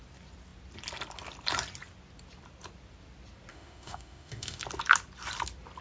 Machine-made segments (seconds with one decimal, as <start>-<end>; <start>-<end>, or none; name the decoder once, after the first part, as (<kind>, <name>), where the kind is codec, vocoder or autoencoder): 3.5-4.6 (autoencoder, DAC-VAE)